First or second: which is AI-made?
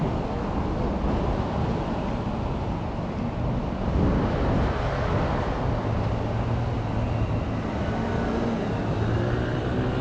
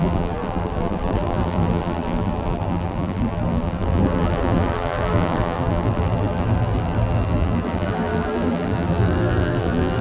second